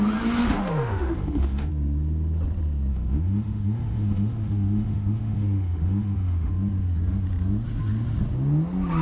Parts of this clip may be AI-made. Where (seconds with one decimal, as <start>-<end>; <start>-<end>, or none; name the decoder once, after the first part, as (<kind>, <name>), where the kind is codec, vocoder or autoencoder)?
0.4-1.7 (autoencoder, DAC-VAE); 2.9-6.5